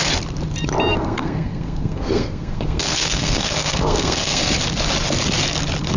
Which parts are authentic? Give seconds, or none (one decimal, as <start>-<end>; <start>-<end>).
0.0-0.9; 4.5-6.0